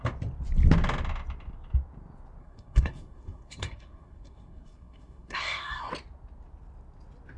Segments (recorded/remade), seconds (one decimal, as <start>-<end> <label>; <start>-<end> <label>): 0.0-2.4 recorded; 2.4-5.9 remade; 5.9-7.4 recorded